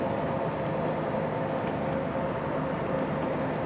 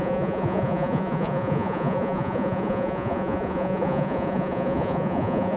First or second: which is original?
first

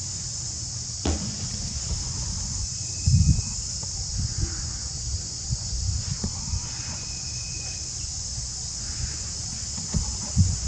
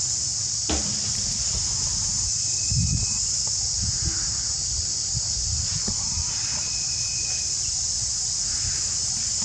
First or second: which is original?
second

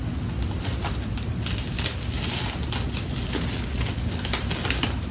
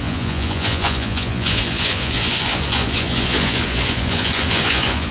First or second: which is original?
first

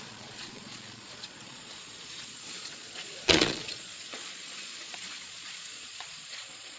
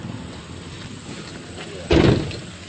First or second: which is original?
second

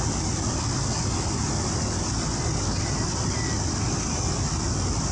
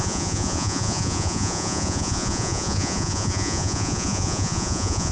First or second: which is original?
first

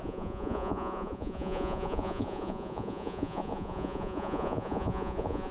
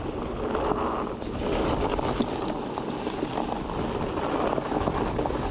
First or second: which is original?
second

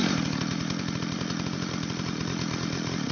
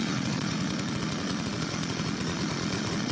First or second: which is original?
first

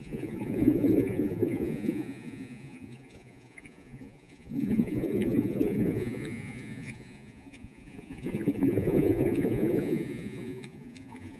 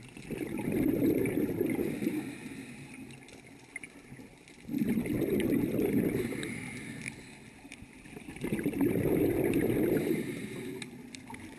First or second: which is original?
second